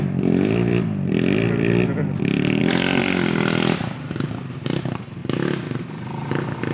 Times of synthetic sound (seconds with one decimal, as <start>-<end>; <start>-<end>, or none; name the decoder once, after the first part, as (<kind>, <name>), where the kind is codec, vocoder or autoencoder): 0.0-2.0 (vocoder, BigVGAN v2); 2.6-5.2; 5.8-6.7